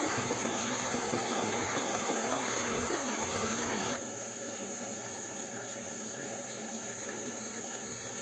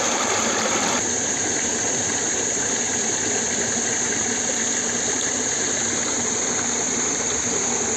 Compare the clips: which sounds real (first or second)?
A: second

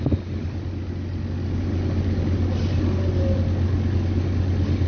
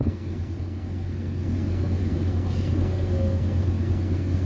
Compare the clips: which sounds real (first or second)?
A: first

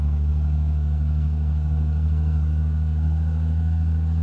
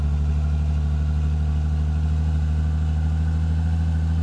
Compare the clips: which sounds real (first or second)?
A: second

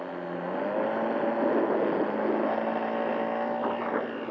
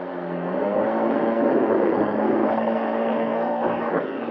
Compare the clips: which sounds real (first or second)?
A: first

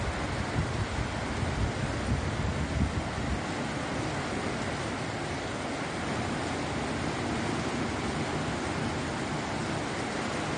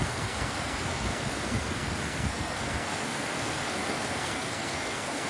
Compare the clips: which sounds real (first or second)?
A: first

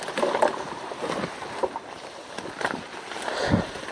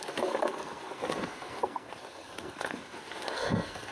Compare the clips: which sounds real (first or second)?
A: first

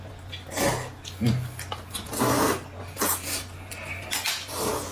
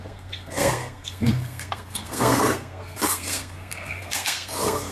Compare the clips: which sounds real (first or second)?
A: first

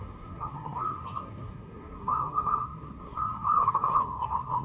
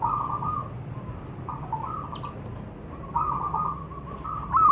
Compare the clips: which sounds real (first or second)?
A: second